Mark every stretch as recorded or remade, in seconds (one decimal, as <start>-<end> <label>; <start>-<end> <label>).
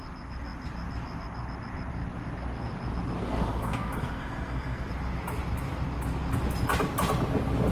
0.0-3.2 recorded; 3.2-4.9 remade; 4.9-7.7 recorded